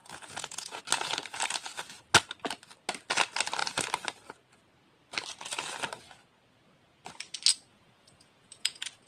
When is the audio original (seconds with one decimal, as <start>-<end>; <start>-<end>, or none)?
0.8-7.7